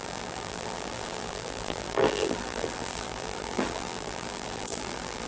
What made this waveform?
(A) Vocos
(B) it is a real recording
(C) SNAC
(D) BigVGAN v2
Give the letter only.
D